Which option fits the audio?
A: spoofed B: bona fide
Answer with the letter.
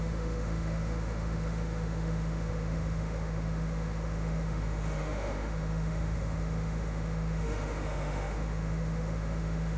A